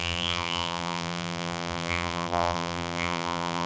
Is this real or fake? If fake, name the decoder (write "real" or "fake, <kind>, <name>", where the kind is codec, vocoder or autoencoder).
fake, vocoder, BigVGAN v2